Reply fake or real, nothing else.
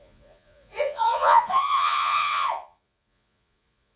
fake